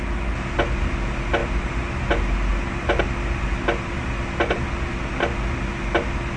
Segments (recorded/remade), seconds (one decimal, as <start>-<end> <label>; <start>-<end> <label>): 0.0-6.4 recorded